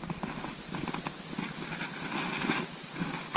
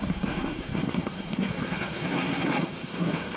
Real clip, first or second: first